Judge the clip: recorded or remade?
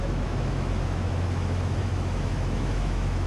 remade